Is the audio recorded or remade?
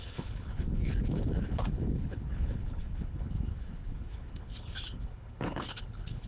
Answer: remade